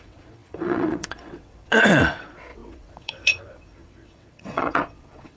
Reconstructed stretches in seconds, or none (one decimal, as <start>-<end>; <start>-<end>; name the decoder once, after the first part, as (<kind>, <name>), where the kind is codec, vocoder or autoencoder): 0.0-5.4 (vocoder, WaveNeXt)

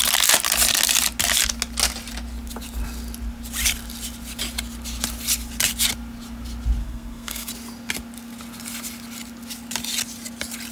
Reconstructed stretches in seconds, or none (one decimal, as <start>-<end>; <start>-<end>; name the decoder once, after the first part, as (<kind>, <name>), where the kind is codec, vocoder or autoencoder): 6.8-7.5 (codec, SNAC)